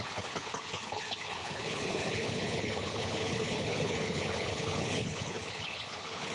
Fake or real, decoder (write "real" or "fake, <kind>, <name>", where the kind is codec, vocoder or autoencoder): fake, codec, HILCodec